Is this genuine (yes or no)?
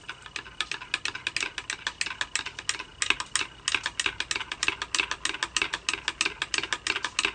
yes